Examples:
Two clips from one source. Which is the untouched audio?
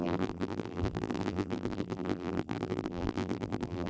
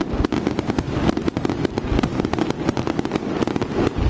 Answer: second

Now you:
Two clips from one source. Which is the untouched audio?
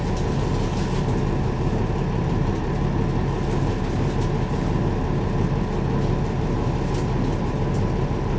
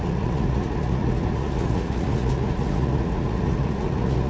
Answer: first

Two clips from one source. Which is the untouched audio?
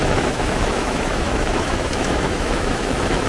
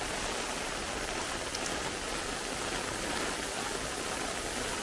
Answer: second